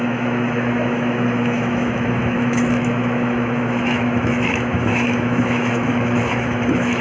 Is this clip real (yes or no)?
no